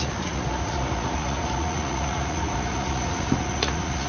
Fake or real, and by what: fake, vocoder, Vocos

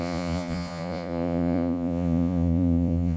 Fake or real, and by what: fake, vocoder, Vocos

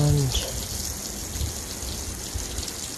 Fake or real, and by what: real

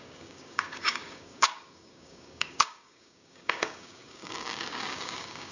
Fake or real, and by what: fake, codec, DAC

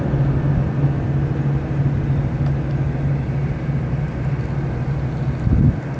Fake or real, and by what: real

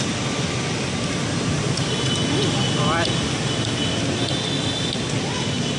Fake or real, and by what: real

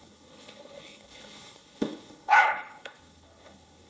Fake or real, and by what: fake, codec, HILCodec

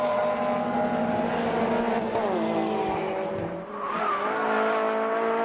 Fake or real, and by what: real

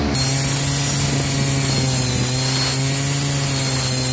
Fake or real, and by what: real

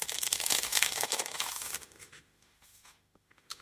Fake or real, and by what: fake, autoencoder, DAC-VAE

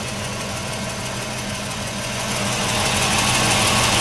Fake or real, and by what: fake, vocoder, Vocos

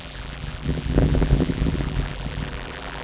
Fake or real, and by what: fake, vocoder, BigVGAN v2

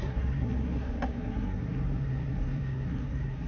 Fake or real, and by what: fake, codec, SNAC